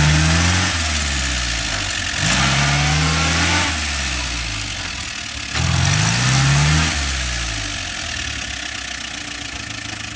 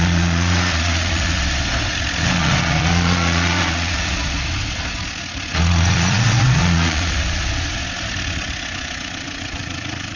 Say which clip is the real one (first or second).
first